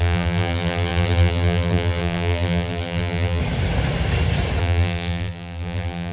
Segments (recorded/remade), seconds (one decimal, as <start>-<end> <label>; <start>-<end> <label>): 0.0-3.4 remade; 3.4-4.6 recorded; 4.6-6.1 remade

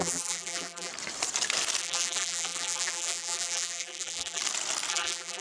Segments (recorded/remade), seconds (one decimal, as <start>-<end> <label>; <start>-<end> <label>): 0.0-0.9 remade; 0.9-1.8 recorded; 1.8-4.4 remade; 4.4-4.9 recorded; 4.9-5.4 remade

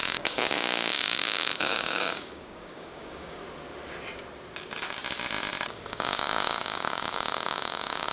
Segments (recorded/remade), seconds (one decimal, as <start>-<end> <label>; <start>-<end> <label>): 0.0-3.4 remade; 3.4-5.7 recorded; 5.7-8.1 remade

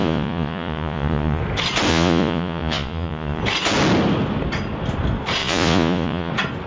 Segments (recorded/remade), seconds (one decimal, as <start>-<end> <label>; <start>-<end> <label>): 0.0-1.4 remade; 1.4-1.9 recorded; 1.9-3.4 remade; 3.4-5.4 recorded; 5.4-6.3 remade; 6.3-6.7 recorded

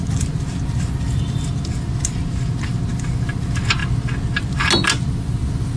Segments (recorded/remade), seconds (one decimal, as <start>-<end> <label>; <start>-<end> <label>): 0.0-3.8 recorded; 3.8-4.6 remade; 4.6-5.8 recorded